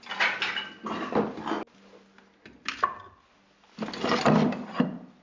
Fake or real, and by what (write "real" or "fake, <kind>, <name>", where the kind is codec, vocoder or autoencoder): real